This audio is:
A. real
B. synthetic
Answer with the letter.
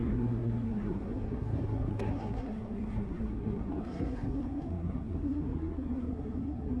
B